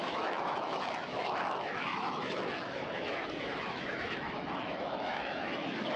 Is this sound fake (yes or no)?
yes